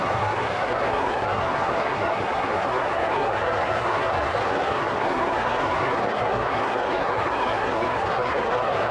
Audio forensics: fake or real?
fake